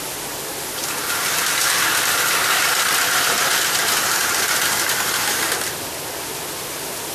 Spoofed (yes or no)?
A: no